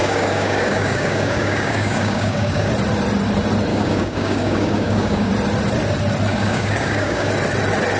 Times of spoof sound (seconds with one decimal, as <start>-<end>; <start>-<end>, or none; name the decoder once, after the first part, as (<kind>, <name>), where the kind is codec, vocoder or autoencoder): 0.0-2.7 (codec, DAC); 3.7-5.3; 6.3-7.3